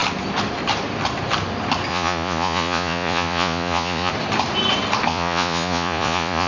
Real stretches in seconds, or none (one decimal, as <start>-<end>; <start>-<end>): 0.0-1.9; 4.1-5.1